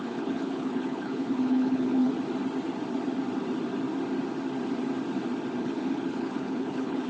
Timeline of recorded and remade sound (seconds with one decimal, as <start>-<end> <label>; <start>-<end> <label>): 0.0-2.1 remade; 2.1-5.6 recorded; 5.6-7.1 remade